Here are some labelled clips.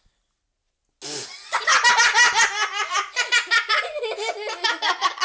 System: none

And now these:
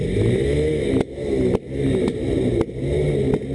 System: none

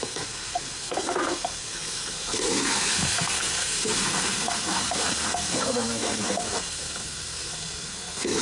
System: codec, SNAC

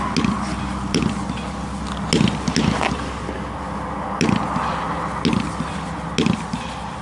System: none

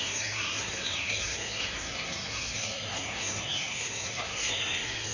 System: codec, SNAC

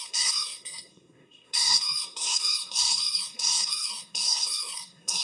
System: codec, SNAC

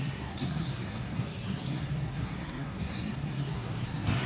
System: codec, SNAC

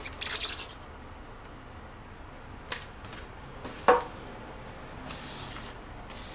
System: none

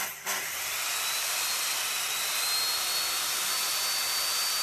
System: none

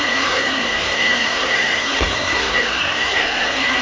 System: codec, SNAC